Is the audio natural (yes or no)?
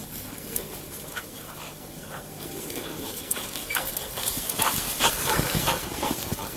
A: no